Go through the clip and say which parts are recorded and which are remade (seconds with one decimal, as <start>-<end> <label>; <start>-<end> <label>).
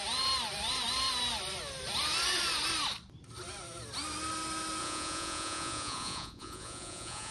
0.0-4.8 recorded; 4.8-7.3 remade